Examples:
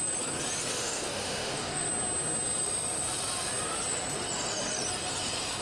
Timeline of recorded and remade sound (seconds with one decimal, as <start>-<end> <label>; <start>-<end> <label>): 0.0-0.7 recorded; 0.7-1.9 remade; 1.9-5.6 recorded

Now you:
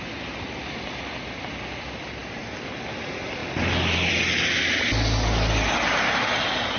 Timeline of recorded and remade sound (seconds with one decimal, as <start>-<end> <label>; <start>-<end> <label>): 0.0-6.8 recorded

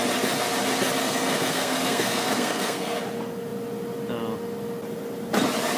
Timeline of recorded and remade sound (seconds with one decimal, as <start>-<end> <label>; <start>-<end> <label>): 0.0-1.0 recorded; 1.0-3.0 remade; 3.0-5.8 recorded

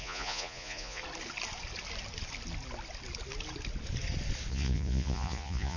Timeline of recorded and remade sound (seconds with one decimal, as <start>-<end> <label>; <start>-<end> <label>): 0.0-1.0 remade; 1.0-4.5 recorded; 4.5-5.8 remade

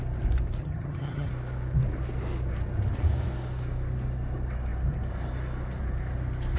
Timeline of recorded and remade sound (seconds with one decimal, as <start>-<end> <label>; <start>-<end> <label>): 0.0-0.6 recorded; 0.6-1.3 remade; 1.3-6.6 recorded